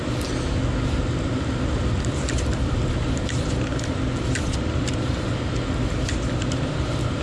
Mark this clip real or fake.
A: real